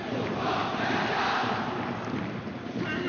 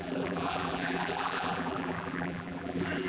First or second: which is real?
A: first